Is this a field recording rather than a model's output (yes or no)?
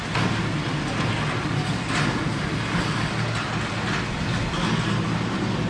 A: yes